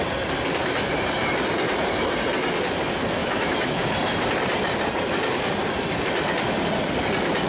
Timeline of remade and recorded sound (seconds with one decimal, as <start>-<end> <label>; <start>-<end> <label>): 0.0-3.2 recorded; 3.2-3.9 remade; 3.9-7.5 recorded